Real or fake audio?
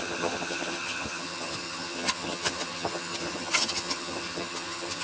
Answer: fake